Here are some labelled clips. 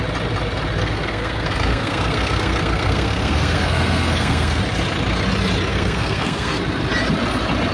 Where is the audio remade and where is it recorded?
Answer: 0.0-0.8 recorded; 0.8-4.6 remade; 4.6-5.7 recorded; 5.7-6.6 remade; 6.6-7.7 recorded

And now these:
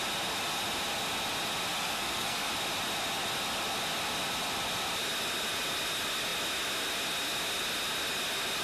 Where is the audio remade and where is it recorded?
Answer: 0.0-1.8 recorded; 1.8-2.5 remade; 2.5-8.6 recorded

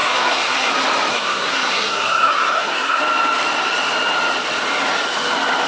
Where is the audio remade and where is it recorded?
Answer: 0.0-0.7 remade; 0.7-1.1 recorded; 1.1-3.0 remade; 3.0-5.7 recorded

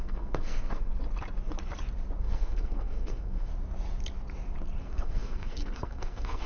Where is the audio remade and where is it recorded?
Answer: 0.0-0.9 remade; 0.9-2.2 recorded; 2.2-3.5 remade; 3.5-4.8 recorded; 4.8-6.5 remade

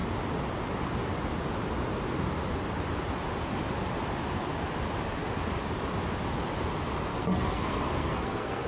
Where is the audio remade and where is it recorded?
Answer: 0.0-7.1 recorded; 7.1-8.7 remade

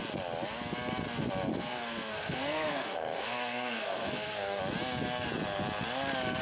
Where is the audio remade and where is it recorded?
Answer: 0.0-1.5 recorded; 1.5-4.6 remade; 4.6-6.4 recorded

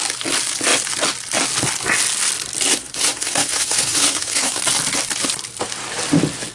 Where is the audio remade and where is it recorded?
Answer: 0.0-2.7 recorded; 2.7-4.6 remade; 4.6-6.5 recorded

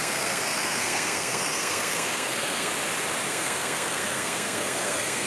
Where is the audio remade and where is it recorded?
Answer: 0.0-2.7 remade; 2.7-3.3 recorded; 3.3-5.3 remade